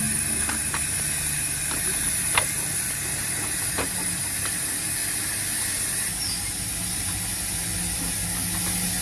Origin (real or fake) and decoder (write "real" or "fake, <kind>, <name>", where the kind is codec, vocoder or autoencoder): real